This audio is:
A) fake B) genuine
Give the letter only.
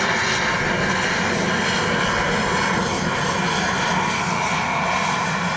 B